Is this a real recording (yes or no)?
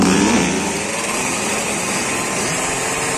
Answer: no